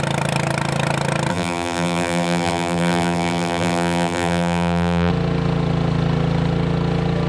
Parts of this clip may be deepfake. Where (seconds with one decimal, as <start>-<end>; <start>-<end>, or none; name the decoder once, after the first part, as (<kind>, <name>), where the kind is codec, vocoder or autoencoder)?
1.3-5.1 (vocoder, BigVGAN v2)